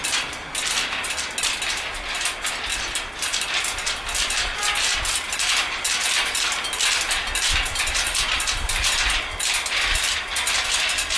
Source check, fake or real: real